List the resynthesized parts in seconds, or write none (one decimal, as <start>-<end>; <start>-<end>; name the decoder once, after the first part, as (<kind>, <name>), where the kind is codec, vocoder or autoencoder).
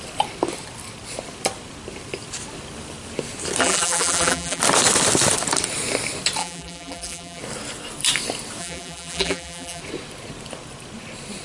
3.6-4.6 (vocoder, BigVGAN v2); 6.4-7.4; 8.6-9.8